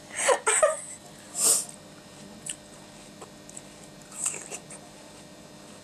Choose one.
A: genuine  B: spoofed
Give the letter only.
A